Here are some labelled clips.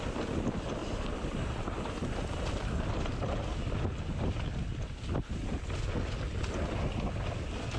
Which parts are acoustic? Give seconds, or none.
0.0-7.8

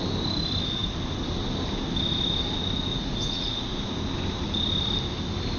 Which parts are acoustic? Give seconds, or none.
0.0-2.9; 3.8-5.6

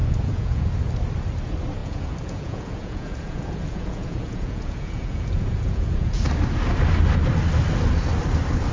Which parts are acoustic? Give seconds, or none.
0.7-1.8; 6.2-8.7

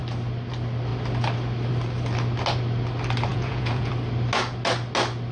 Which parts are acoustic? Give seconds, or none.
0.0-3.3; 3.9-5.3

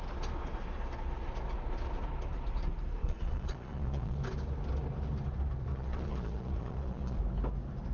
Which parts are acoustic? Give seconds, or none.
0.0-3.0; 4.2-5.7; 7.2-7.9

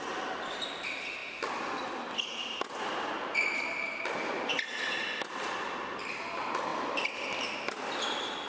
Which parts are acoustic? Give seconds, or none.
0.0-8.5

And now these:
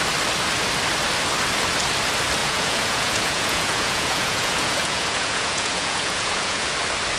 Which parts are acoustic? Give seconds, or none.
0.0-2.4; 6.7-7.2

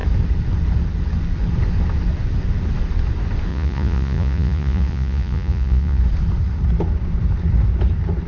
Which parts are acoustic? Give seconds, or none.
0.0-3.5; 6.0-8.3